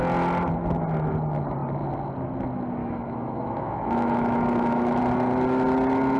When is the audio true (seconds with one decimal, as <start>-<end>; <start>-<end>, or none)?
0.0-2.8; 5.0-6.2